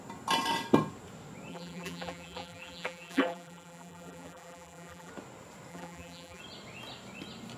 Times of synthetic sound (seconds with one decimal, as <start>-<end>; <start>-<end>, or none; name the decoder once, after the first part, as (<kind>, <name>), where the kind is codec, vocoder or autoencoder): 1.5-5.1 (vocoder, BigVGAN v2); 5.7-6.4